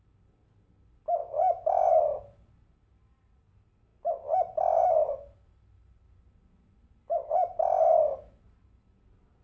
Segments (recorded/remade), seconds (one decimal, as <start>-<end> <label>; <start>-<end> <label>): 0.0-1.2 recorded; 1.2-1.9 remade; 1.9-9.4 recorded